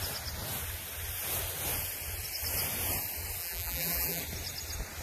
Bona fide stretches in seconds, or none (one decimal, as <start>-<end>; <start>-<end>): 0.0-3.4; 4.2-5.0